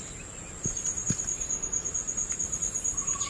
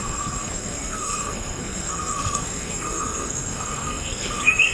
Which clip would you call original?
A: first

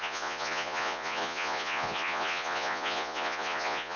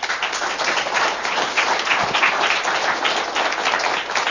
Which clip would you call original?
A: second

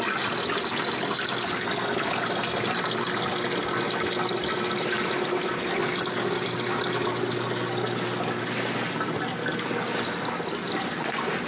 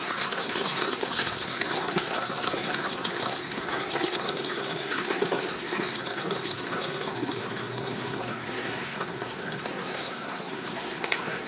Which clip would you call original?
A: first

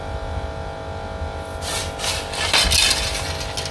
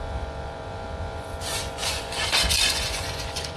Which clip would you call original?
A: first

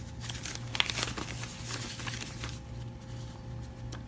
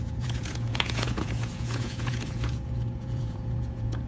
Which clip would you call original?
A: first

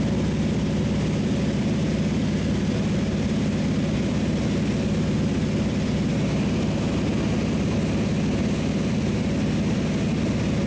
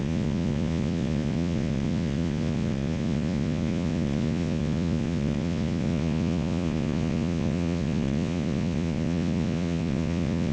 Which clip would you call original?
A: first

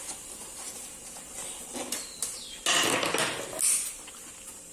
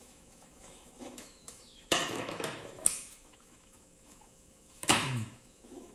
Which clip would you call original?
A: first